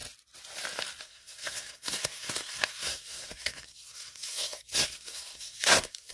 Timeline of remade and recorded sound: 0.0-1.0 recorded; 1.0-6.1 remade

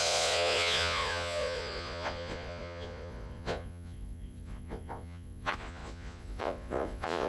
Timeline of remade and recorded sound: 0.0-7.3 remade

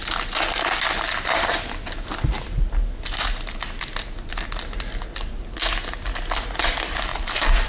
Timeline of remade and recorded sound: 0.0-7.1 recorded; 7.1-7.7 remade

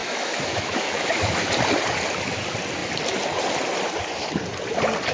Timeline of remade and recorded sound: 0.0-1.5 remade; 1.5-5.1 recorded